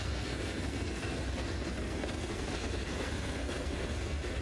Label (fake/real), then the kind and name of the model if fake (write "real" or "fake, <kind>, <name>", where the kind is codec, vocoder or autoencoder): fake, codec, SNAC